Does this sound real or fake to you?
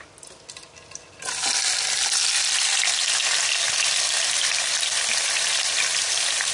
real